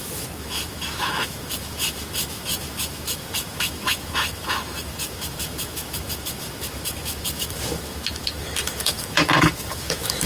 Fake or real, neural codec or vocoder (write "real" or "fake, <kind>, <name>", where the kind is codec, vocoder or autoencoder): fake, autoencoder, DAC-VAE